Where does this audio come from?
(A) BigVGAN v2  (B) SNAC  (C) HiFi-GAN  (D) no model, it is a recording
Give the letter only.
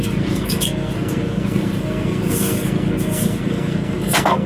B